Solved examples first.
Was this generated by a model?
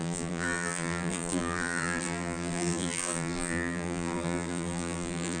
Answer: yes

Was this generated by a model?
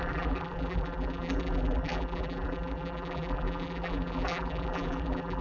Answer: yes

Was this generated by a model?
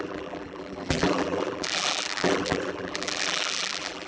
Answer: yes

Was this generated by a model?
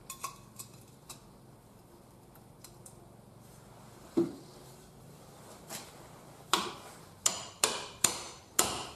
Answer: yes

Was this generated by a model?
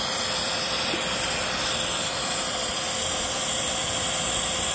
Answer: yes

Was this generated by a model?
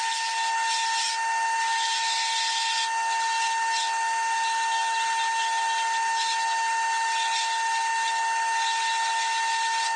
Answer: no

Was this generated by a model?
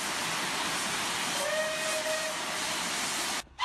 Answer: no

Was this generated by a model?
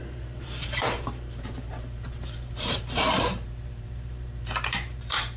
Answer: yes